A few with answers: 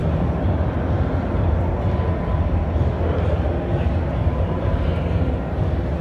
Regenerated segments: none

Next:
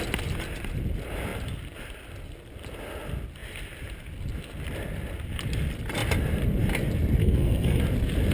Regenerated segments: 7.2-7.8

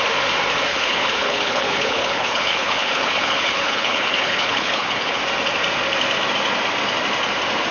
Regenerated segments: 0.7-5.2